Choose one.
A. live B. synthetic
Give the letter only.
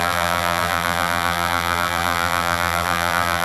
B